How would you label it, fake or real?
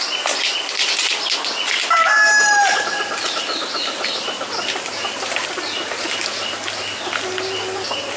real